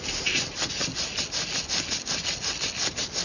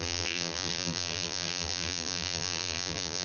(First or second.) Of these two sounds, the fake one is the second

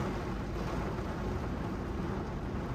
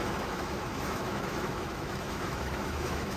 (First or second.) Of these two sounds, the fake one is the second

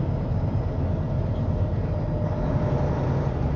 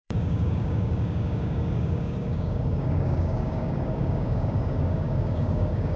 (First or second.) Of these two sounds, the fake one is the second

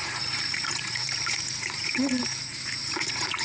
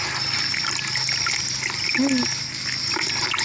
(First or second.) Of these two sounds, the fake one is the first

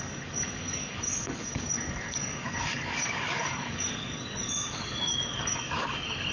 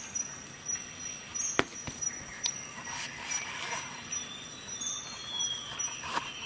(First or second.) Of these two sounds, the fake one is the first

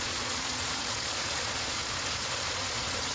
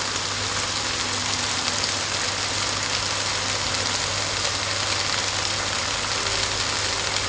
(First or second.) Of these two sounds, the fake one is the first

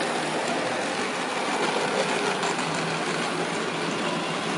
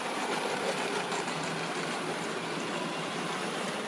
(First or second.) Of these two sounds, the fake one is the second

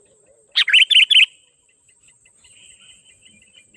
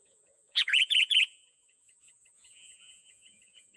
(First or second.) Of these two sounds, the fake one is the second